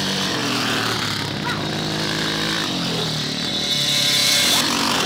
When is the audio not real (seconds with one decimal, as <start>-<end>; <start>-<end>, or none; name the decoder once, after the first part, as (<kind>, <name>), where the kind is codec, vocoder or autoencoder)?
0.4-3.5 (vocoder, BigVGAN v2); 4.2-5.1